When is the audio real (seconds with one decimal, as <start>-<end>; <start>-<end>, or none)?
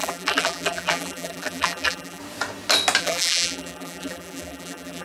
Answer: 2.2-3.0